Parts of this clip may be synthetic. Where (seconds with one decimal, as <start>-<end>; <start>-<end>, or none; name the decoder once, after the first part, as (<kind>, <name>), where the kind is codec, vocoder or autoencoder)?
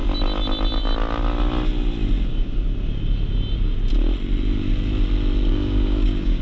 5.5-6.4 (codec, DAC)